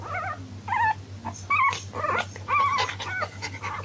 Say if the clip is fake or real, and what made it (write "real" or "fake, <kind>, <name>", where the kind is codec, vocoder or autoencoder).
real